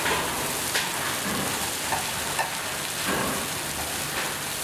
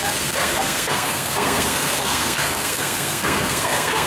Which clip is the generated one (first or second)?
second